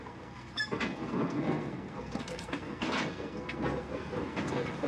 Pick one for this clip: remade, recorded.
remade